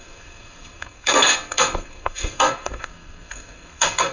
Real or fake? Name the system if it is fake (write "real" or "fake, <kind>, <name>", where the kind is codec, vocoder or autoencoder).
fake, codec, SNAC